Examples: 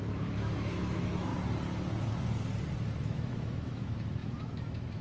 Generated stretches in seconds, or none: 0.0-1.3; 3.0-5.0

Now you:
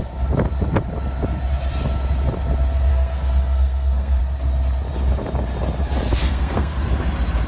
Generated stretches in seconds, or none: 2.9-4.2; 6.2-6.9

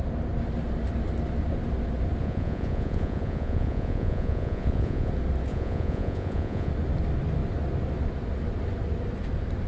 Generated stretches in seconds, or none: 2.2-5.1; 5.5-6.7

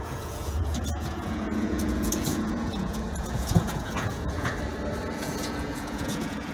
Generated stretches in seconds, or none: 0.0-4.5; 5.0-6.5

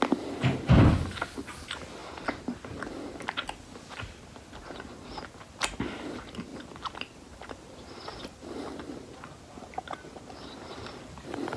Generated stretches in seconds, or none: 2.0-3.6; 6.5-8.9

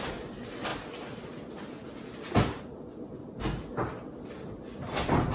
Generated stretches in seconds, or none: none

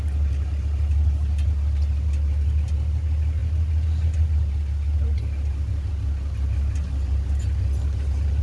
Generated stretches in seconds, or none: none